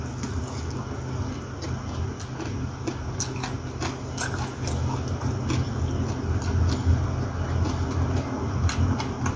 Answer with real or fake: real